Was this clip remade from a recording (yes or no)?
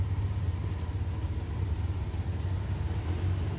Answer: no